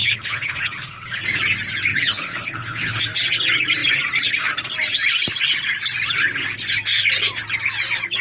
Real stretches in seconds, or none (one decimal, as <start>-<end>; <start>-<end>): 1.2-1.9; 3.0-8.2